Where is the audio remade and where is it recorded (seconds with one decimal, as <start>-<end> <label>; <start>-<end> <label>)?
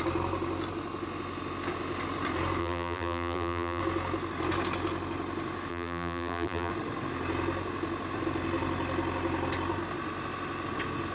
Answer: 0.0-2.6 recorded; 2.6-3.8 remade; 3.8-5.7 recorded; 5.7-6.7 remade; 6.7-11.1 recorded